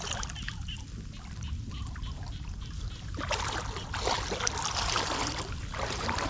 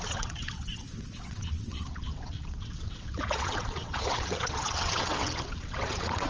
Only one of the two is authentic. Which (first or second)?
first